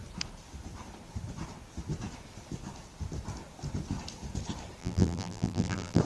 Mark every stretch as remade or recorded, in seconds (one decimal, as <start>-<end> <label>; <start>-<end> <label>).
0.0-4.8 recorded; 4.8-6.0 remade